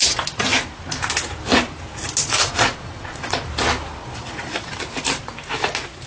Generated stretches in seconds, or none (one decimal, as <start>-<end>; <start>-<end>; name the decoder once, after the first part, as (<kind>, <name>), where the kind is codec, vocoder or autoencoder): 2.2-3.5 (vocoder, Vocos); 4.0-4.8